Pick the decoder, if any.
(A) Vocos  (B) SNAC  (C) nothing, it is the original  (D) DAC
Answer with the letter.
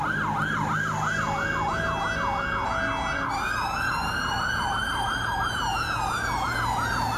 C